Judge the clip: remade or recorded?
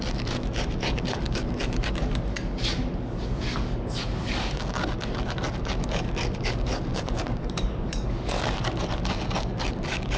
remade